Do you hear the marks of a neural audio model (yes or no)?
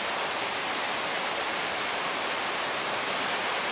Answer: no